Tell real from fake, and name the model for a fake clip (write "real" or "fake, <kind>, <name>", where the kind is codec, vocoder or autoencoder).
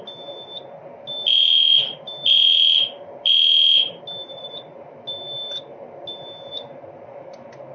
real